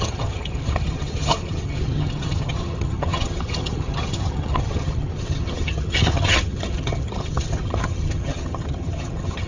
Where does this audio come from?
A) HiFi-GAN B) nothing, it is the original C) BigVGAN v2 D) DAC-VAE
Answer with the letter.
A